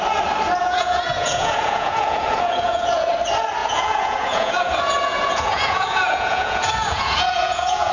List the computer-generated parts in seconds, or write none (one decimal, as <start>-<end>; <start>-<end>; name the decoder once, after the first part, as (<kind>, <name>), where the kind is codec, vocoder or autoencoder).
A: 0.6-3.1 (vocoder, Vocos); 3.6-7.9